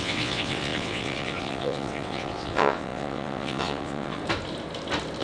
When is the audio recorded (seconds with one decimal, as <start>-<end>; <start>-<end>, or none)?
4.2-5.2